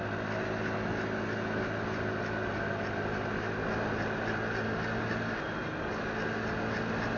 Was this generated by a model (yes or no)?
no